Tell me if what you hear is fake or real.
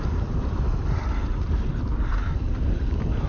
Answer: real